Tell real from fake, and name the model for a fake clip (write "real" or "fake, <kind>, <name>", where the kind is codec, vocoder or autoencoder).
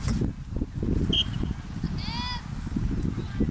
real